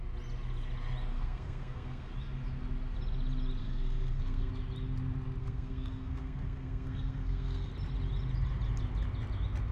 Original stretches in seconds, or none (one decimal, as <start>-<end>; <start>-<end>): 0.0-1.1; 2.1-3.6; 4.5-5.4; 7.7-9.7